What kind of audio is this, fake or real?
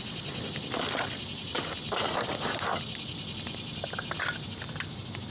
real